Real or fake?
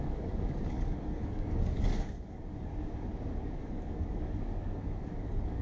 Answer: fake